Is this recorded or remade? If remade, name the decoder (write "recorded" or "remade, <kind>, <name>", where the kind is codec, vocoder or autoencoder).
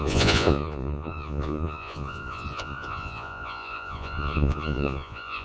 remade, vocoder, Vocos